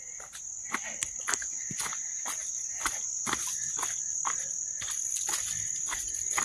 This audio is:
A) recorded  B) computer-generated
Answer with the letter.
A